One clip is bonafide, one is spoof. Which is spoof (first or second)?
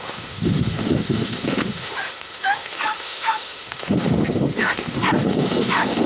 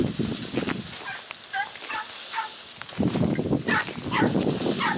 first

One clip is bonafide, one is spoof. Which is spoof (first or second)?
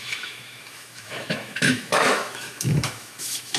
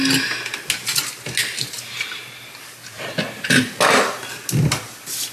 first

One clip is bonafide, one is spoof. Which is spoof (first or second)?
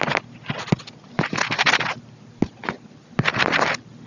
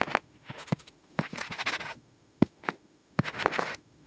second